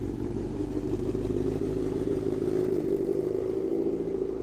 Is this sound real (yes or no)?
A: no